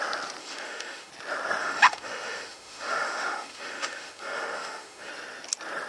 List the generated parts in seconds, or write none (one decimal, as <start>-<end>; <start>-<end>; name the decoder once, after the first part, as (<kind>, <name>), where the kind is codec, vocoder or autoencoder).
0.4-1.1 (autoencoder, DAC-VAE); 1.6-5.1